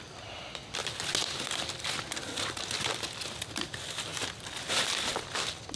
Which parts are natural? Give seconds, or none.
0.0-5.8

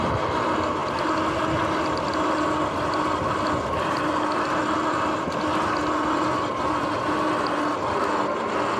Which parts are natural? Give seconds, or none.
0.0-8.8

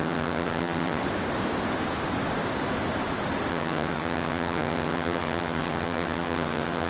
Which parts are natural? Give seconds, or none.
1.0-3.5

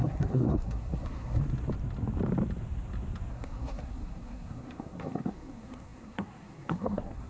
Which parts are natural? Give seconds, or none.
1.4-3.3

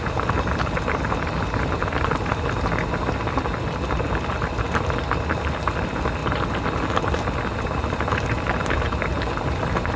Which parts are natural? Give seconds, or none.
0.0-10.0

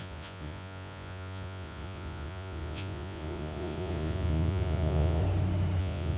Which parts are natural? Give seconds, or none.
5.2-5.8

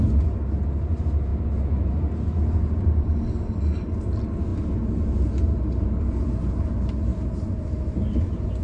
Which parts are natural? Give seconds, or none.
0.0-8.6

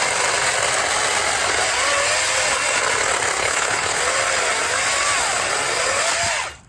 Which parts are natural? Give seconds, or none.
0.0-3.4; 4.0-6.7